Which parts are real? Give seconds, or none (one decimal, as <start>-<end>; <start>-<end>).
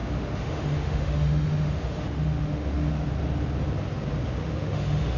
3.1-4.4